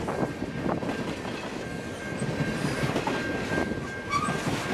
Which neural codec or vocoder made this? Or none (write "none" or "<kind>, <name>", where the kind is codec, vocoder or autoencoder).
none